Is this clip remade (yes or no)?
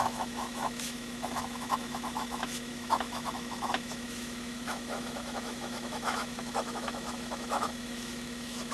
yes